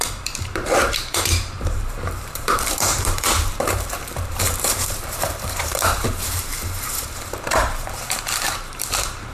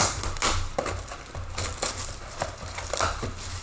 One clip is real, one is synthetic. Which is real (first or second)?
second